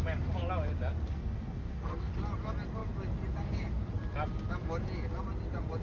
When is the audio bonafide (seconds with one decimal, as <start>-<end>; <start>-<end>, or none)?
0.0-1.1; 2.1-5.8